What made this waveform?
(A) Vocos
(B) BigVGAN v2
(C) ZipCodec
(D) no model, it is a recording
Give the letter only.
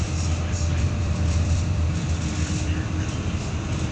B